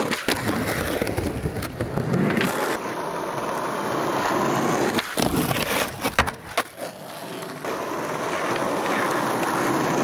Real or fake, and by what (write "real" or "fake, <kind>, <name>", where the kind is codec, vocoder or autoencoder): real